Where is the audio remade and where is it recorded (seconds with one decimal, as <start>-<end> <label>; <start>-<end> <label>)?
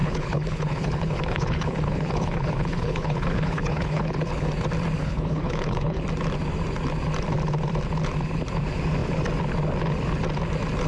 0.0-4.5 remade; 4.5-5.0 recorded; 5.0-6.0 remade; 6.0-10.9 recorded